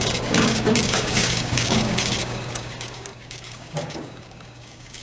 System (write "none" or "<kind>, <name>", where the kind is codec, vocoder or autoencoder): codec, DAC